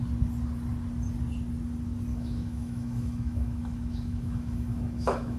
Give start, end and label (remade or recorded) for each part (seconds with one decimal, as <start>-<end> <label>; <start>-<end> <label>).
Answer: 0.0-2.1 recorded; 2.1-5.4 remade